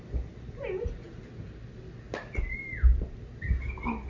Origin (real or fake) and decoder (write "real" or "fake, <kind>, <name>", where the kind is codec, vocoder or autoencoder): real